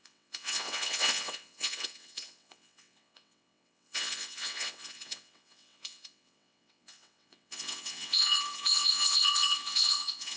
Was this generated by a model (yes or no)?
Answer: yes